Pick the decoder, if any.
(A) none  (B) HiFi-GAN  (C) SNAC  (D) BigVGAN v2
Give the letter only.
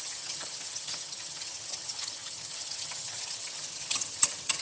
B